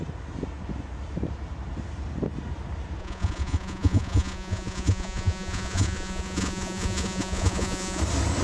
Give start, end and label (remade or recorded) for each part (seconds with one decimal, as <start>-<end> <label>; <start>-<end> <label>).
0.0-3.0 recorded; 3.0-8.0 remade; 8.0-8.4 recorded